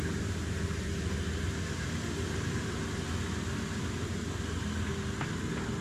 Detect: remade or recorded recorded